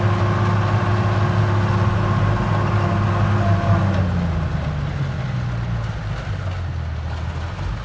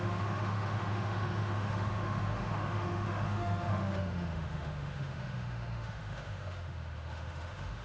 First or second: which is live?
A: first